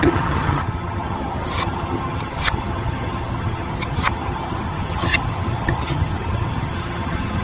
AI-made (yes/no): yes